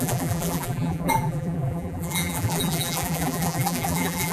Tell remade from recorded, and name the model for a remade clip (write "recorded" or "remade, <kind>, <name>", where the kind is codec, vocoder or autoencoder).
remade, vocoder, BigVGAN v2